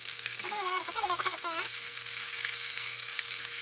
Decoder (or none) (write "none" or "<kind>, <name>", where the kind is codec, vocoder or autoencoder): codec, SNAC